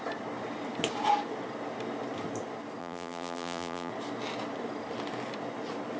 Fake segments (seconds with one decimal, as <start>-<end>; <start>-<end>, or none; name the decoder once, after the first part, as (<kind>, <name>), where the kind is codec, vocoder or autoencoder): 2.8-3.9 (vocoder, BigVGAN v2)